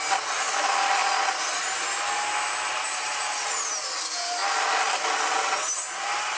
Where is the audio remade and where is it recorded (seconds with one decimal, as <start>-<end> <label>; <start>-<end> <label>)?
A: 0.0-6.4 recorded

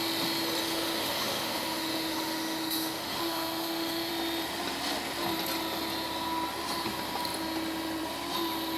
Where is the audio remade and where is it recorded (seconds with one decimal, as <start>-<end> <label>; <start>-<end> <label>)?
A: 0.0-0.6 recorded; 0.6-4.1 remade; 4.1-8.8 recorded

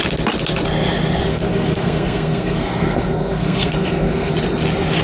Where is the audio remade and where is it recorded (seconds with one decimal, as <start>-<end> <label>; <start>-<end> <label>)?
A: 0.0-1.3 recorded; 1.3-4.3 remade; 4.3-5.0 recorded

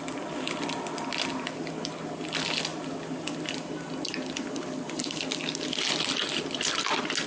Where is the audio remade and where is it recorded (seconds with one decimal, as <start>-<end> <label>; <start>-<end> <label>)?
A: 0.0-7.3 recorded

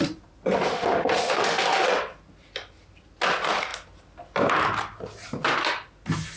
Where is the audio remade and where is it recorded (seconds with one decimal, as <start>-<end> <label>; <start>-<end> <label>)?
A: 0.0-0.7 recorded; 0.7-1.9 remade; 1.9-6.4 recorded

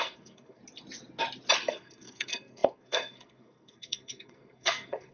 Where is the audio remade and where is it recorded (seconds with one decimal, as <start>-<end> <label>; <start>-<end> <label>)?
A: 0.0-0.6 remade; 0.6-1.7 recorded; 1.7-5.1 remade

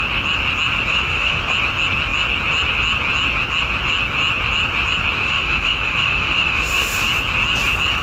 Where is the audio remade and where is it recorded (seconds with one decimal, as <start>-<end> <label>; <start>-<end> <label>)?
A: 0.0-0.9 recorded; 0.9-1.4 remade; 1.4-5.2 recorded; 5.2-7.0 remade; 7.0-8.0 recorded